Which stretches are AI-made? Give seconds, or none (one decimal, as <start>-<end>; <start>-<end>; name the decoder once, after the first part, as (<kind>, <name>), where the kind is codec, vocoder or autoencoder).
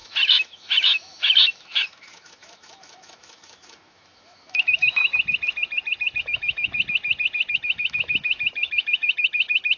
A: 0.0-5.0 (autoencoder, DAC-VAE); 6.2-6.7; 7.5-9.8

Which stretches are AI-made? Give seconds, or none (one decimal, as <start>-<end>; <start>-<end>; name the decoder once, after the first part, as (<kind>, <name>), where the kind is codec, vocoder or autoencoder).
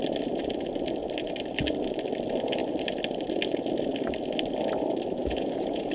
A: 5.2-5.9 (vocoder, Vocos)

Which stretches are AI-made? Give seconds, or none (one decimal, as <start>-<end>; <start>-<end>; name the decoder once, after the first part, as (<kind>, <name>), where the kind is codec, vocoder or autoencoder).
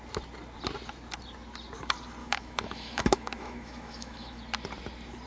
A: 2.2-4.4 (autoencoder, DAC-VAE)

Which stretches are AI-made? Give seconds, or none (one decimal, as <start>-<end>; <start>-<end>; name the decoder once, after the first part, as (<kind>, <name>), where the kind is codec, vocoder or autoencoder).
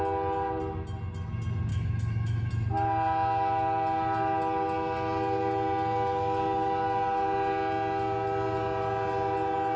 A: 1.7-2.5 (autoencoder, DAC-VAE)